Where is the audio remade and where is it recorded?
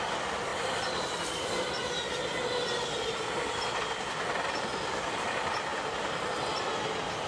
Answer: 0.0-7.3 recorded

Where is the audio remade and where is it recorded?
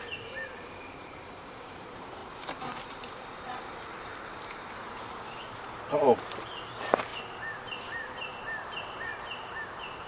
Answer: 0.0-9.1 remade; 9.1-9.7 recorded; 9.7-10.1 remade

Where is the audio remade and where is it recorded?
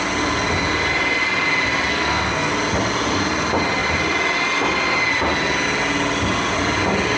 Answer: 0.0-1.9 recorded; 1.9-2.5 remade; 2.5-7.2 recorded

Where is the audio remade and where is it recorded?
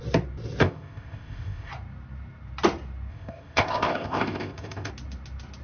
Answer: 0.0-0.6 recorded; 0.6-1.7 remade; 1.7-3.1 recorded; 3.1-4.9 remade; 4.9-5.6 recorded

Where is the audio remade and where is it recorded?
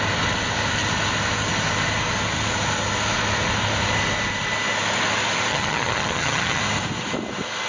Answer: 0.0-5.5 recorded; 5.5-6.6 remade; 6.6-7.7 recorded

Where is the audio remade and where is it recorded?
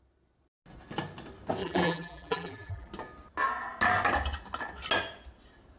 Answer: 0.0-1.6 recorded; 1.6-2.9 remade; 2.9-5.8 recorded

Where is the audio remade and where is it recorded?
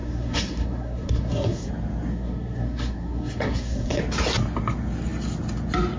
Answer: 0.0-1.7 remade; 1.7-2.1 recorded; 2.1-4.0 remade; 4.0-6.0 recorded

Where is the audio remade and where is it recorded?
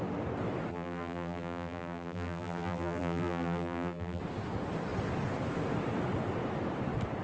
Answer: 0.0-0.7 recorded; 0.7-4.2 remade; 4.2-7.2 recorded